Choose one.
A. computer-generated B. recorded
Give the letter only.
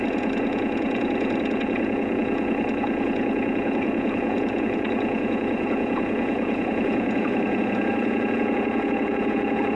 A